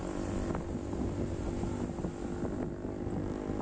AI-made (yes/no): no